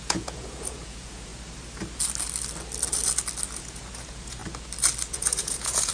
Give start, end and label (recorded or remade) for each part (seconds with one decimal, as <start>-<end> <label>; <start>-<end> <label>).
0.0-1.3 remade; 1.3-3.6 recorded; 3.6-4.4 remade; 4.4-5.1 recorded; 5.1-5.9 remade